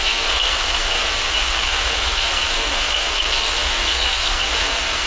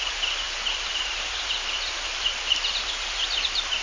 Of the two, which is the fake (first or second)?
first